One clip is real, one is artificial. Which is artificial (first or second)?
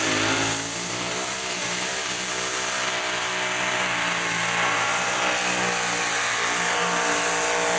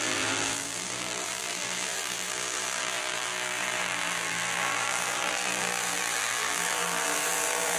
second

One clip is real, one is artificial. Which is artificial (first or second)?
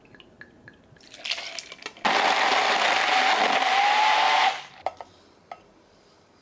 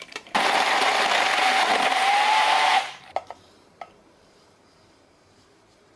second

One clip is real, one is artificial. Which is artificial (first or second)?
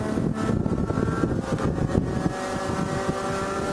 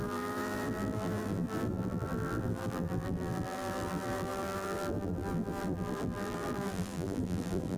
second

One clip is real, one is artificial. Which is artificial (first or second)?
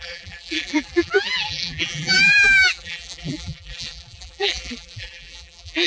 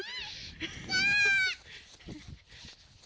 first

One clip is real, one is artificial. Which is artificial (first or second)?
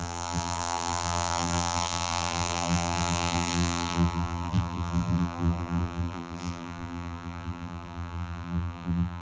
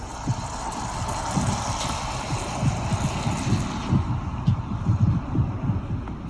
first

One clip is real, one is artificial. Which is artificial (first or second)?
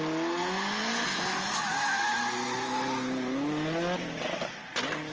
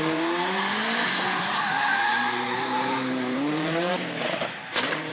second